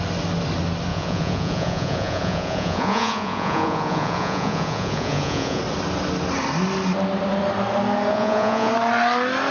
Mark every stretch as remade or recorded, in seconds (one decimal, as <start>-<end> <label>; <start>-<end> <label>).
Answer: 0.0-0.9 recorded; 0.9-5.6 remade; 5.6-8.1 recorded; 8.1-8.7 remade; 8.7-9.5 recorded